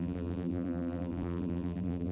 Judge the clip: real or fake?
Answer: fake